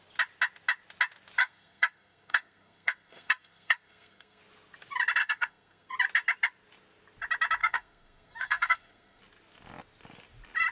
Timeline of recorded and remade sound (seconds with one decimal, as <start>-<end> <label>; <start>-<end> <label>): 0.0-1.4 recorded; 1.4-4.4 remade; 4.4-5.2 recorded; 5.2-5.9 remade; 5.9-7.6 recorded; 7.6-9.2 remade; 9.2-10.7 recorded